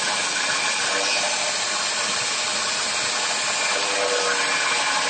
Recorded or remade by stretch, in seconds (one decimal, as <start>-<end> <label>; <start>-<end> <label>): 0.0-5.1 recorded